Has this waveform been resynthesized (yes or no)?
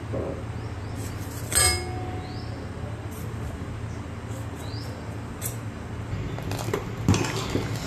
no